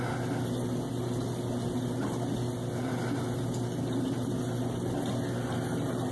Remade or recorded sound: recorded